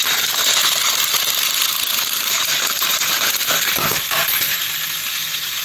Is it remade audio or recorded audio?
remade